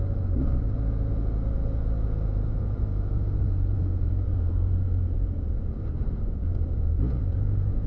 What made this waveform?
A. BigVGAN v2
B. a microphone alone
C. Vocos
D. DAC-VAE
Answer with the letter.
C